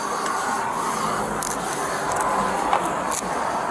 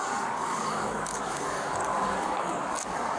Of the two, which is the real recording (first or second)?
first